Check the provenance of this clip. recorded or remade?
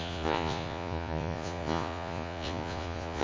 remade